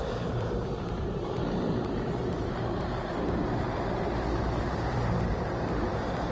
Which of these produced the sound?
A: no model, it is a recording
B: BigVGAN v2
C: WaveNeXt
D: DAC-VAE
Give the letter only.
B